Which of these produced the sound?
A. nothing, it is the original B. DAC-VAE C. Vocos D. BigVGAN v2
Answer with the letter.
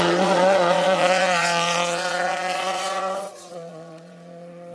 C